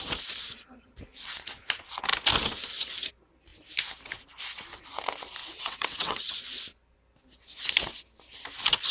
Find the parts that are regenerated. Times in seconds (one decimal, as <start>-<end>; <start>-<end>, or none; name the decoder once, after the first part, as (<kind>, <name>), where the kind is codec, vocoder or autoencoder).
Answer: 5.4-6.4 (vocoder, WaveNeXt)